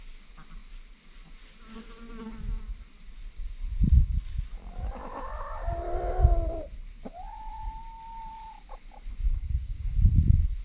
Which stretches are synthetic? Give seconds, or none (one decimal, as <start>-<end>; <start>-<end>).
9.3-9.8